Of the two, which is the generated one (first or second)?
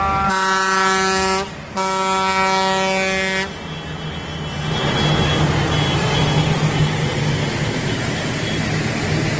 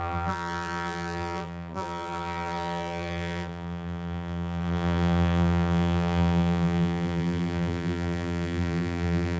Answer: second